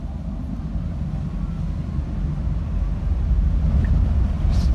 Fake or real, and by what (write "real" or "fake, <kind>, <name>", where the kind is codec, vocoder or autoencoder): real